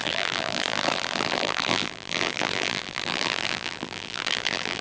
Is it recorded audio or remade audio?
remade